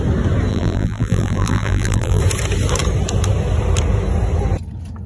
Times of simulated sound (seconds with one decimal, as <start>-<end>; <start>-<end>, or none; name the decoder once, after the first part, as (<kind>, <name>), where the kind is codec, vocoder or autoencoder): 0.5-2.2 (vocoder, BigVGAN v2)